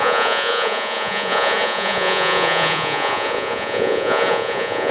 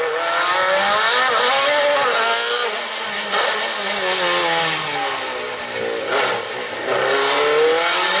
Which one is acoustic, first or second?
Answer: second